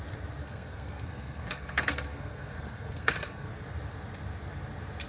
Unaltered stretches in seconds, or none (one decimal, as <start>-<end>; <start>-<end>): 0.0-0.4; 3.5-5.1

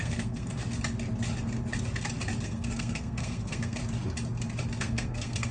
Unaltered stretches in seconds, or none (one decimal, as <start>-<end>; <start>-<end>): 0.6-2.4; 3.8-4.8

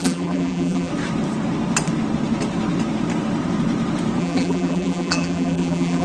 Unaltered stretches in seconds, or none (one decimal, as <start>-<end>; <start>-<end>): 0.9-4.2

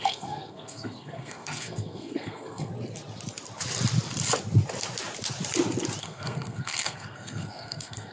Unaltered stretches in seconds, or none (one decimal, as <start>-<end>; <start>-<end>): 2.7-6.0

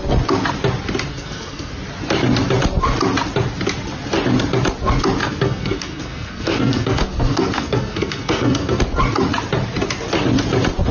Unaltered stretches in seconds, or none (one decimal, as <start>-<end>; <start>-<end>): 0.0-1.1; 1.7-5.2; 8.8-10.9

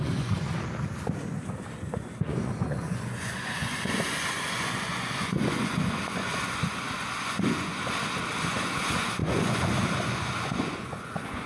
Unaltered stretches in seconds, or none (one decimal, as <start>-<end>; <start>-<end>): 0.5-1.8; 7.8-8.4

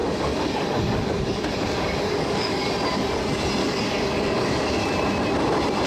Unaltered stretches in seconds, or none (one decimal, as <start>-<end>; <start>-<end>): 2.7-3.6; 4.7-5.9

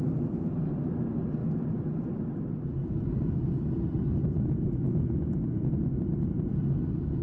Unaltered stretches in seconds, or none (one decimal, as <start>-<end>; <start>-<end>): 0.0-1.4; 2.2-2.8; 6.5-7.2